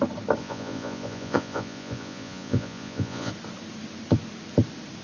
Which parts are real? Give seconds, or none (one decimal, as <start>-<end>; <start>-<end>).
0.0-0.4; 3.3-5.0